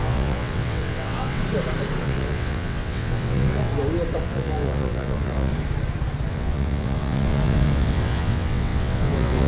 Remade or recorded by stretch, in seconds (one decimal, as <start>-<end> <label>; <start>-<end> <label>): 0.0-1.4 remade; 1.4-2.0 recorded; 2.0-3.7 remade; 3.7-4.2 recorded; 4.2-5.5 remade; 5.5-6.3 recorded; 6.3-9.5 remade